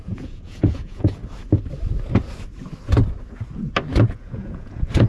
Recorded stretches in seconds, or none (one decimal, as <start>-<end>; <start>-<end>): 1.2-4.0